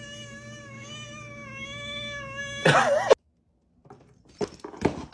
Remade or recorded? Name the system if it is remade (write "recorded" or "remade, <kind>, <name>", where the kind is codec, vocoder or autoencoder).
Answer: recorded